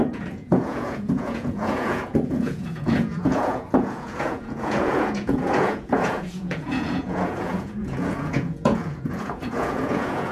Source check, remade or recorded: remade